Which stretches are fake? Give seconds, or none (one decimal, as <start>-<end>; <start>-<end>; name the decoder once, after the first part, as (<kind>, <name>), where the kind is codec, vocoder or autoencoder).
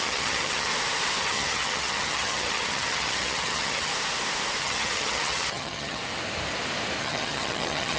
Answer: 0.0-0.7 (vocoder, HiFi-GAN); 1.2-3.9; 4.6-6.0; 7.0-8.0